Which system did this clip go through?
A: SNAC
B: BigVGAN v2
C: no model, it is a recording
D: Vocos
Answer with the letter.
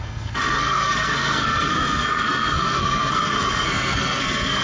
A